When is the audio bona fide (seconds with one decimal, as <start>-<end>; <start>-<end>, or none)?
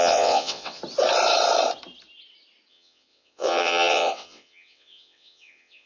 0.8-2.7